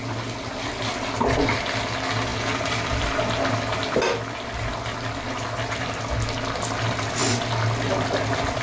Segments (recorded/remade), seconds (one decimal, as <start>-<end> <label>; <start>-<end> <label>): 0.0-8.6 recorded